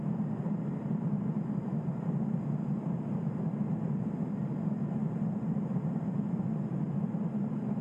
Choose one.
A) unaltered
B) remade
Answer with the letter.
A